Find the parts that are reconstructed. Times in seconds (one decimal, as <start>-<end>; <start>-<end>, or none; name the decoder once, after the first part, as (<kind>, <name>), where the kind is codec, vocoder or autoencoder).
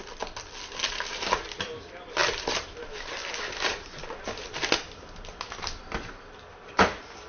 none